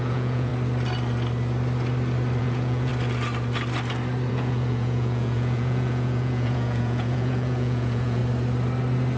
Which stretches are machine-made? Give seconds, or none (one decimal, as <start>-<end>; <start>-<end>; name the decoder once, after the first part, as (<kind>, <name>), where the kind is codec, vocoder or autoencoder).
0.0-0.5 (vocoder, Vocos); 2.4-2.9; 4.3-8.2